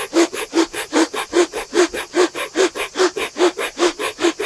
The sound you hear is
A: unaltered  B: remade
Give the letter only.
A